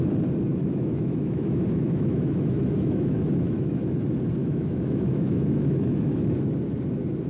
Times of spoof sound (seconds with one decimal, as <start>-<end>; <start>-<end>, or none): 0.6-3.8; 4.4-6.3

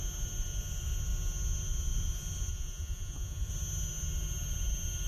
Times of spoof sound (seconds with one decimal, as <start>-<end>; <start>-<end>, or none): 2.5-3.5